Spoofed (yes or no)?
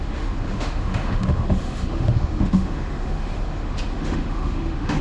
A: yes